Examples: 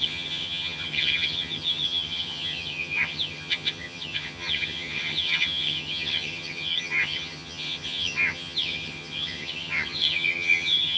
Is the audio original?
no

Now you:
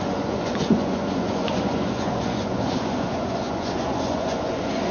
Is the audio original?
no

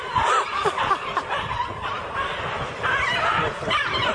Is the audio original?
no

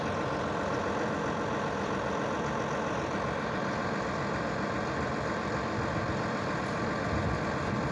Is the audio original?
yes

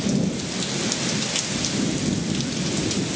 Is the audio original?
yes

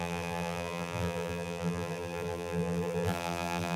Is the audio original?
no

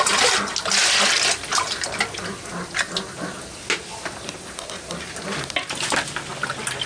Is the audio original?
yes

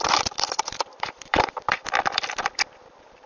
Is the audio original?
no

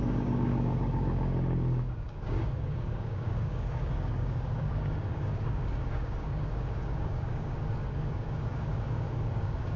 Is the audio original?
no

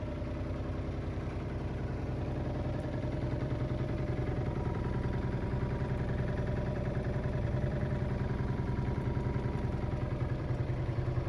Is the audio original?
no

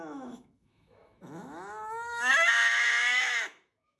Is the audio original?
no